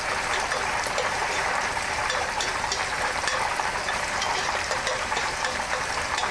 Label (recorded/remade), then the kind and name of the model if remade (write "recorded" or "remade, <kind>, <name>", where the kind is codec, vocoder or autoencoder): remade, vocoder, BigVGAN v2